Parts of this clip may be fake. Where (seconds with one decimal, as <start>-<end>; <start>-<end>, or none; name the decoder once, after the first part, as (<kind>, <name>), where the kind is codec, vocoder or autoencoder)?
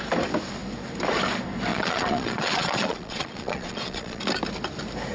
1.7-4.2 (vocoder, Vocos)